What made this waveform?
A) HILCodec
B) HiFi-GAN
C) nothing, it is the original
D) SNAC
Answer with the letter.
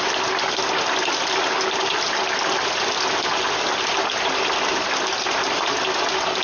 C